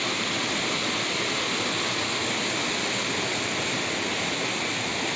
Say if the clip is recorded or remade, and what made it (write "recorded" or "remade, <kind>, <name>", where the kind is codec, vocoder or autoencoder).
recorded